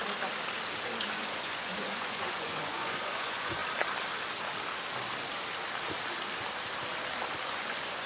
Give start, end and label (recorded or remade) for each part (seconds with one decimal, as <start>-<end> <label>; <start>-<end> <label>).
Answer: 0.0-1.0 recorded; 1.0-3.6 remade; 3.6-7.4 recorded; 7.4-8.1 remade